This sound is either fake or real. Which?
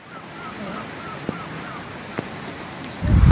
fake